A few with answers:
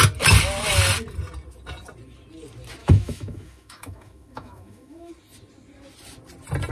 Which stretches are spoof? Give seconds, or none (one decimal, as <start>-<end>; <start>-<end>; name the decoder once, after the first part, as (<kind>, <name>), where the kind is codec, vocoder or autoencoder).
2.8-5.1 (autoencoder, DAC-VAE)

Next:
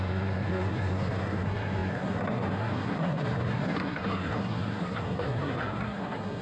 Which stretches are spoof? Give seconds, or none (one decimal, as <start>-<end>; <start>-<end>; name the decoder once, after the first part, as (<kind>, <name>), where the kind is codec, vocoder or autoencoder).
0.0-6.4 (codec, SNAC)

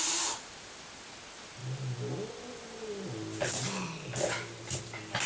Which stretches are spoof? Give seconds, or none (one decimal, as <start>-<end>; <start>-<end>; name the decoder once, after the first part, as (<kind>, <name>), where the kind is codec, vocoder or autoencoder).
none

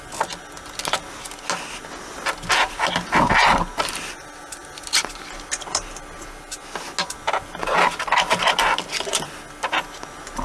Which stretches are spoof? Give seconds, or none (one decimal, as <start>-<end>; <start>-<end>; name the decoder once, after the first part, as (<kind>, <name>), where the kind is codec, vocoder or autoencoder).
none

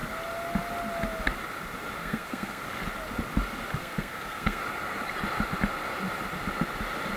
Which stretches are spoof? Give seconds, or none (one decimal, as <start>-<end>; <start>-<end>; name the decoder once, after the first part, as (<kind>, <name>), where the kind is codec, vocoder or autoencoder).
2.0-2.6 (codec, SNAC); 3.8-4.6